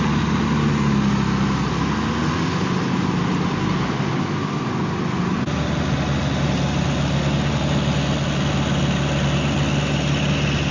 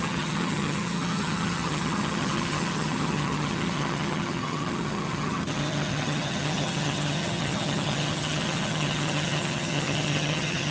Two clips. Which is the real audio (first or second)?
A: first